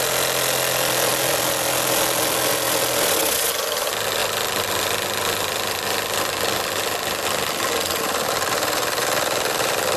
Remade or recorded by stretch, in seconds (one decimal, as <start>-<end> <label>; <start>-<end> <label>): 0.0-1.1 recorded; 1.1-2.5 remade; 2.5-10.0 recorded